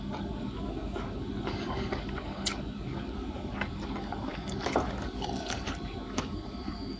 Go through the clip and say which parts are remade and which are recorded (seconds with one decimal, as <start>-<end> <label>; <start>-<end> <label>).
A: 0.0-7.0 remade